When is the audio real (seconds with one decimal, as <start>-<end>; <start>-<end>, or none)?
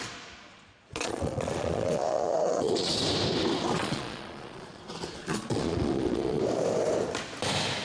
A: 0.0-0.5; 2.9-3.8; 4.8-5.2; 6.4-7.8